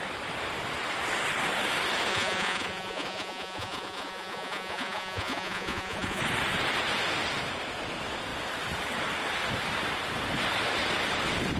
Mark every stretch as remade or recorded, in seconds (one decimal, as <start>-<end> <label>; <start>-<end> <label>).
0.0-2.1 recorded; 2.1-6.2 remade; 6.2-11.6 recorded